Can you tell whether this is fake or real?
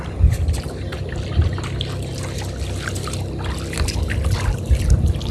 real